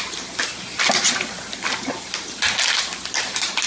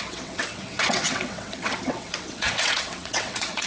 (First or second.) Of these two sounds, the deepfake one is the second